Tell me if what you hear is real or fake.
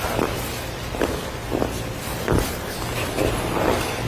real